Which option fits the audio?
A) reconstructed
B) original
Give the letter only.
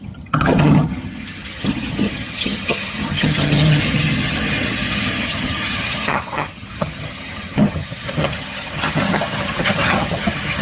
A